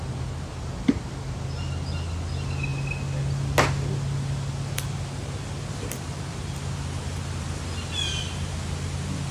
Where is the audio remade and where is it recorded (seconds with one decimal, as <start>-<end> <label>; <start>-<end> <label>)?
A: 0.0-9.3 recorded